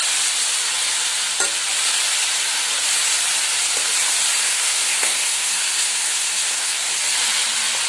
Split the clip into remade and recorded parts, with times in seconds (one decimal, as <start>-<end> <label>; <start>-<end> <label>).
0.0-4.4 recorded; 4.4-6.9 remade; 6.9-7.9 recorded